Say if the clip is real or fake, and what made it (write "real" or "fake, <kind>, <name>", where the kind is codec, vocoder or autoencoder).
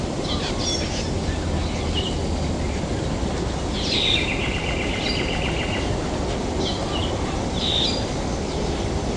real